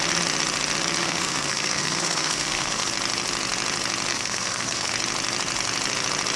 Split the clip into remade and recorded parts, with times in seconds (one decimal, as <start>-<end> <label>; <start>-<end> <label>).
0.0-1.0 recorded; 1.0-2.9 remade; 2.9-4.1 recorded; 4.1-4.9 remade; 4.9-6.4 recorded